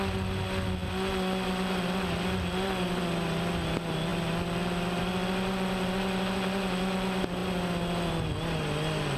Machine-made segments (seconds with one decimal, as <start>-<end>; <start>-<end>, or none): none